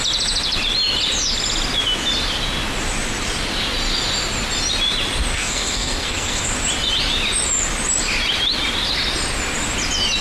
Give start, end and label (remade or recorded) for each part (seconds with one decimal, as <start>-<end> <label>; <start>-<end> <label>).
0.0-5.3 recorded; 5.3-6.4 remade; 6.4-10.2 recorded